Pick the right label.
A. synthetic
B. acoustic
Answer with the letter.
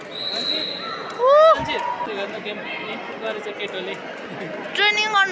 B